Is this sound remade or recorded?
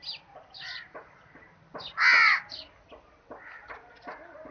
recorded